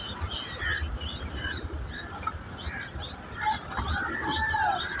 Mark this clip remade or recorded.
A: recorded